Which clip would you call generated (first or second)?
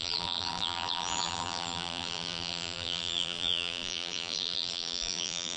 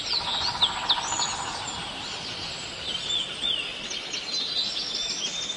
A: first